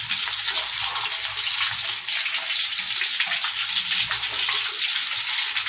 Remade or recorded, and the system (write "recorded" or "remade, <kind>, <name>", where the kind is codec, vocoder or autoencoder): recorded